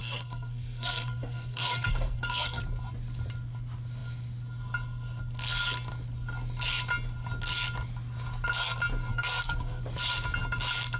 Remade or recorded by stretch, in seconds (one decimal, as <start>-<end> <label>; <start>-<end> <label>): 0.0-2.6 remade; 2.6-9.1 recorded; 9.1-9.8 remade; 9.8-11.0 recorded